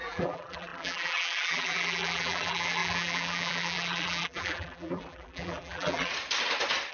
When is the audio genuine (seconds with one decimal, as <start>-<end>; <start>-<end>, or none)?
6.1-6.9